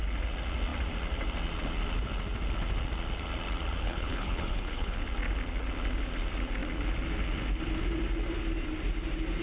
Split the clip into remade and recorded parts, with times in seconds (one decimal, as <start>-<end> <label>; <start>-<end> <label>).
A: 0.0-3.8 recorded; 3.8-5.0 remade; 5.0-9.4 recorded